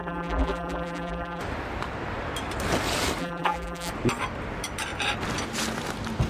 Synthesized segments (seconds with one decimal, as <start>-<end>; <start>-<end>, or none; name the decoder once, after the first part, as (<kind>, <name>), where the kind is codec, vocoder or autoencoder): 0.0-1.4 (vocoder, BigVGAN v2); 3.2-3.9